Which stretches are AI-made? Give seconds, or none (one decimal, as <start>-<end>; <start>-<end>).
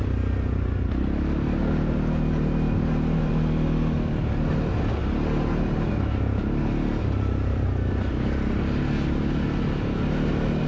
none